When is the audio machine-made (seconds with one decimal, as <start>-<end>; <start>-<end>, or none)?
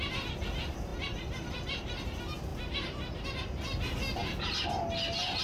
2.5-3.3